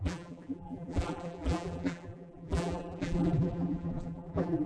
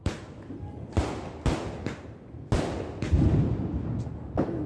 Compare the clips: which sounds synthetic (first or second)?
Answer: first